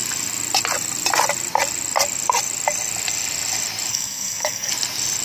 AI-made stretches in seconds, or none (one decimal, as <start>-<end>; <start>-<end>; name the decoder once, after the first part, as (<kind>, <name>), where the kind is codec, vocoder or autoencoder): 3.9-4.7 (codec, SNAC)

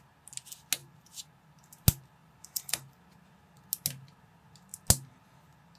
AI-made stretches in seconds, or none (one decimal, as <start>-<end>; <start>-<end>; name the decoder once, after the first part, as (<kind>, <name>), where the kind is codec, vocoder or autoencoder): 0.8-1.6 (vocoder, BigVGAN v2); 2.2-3.0

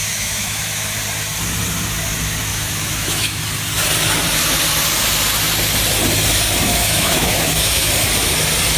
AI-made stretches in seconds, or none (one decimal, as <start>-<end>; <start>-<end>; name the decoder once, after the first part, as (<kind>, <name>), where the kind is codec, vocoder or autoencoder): 0.0-0.9 (autoencoder, DAC-VAE); 2.5-3.4; 6.7-7.9

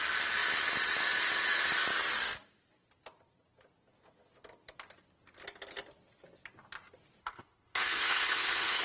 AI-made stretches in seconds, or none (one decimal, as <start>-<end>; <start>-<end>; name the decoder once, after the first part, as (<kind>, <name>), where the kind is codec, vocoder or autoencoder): 7.2-8.8 (codec, HILCodec)